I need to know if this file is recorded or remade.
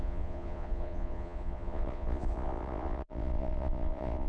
remade